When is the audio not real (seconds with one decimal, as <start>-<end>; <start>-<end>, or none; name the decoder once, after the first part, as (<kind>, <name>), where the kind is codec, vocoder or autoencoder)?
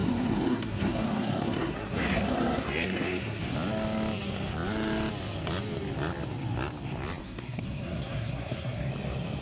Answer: 0.0-3.4 (codec, SNAC); 7.2-8.9